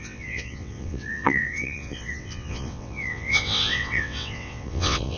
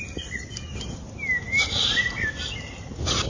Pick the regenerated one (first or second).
first